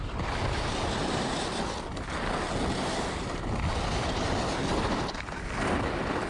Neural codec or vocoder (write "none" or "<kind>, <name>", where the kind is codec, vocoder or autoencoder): none